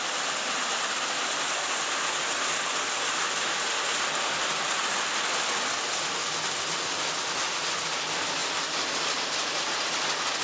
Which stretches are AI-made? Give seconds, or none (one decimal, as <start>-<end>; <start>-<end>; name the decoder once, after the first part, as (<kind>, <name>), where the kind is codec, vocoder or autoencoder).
none